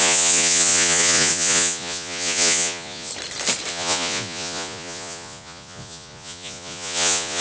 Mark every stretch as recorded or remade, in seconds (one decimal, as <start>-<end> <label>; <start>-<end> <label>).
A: 0.0-3.1 remade; 3.1-3.7 recorded; 3.7-7.4 remade